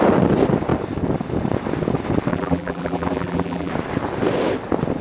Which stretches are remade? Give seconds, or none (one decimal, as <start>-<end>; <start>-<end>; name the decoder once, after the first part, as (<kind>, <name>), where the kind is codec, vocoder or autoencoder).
2.3-3.7 (vocoder, BigVGAN v2)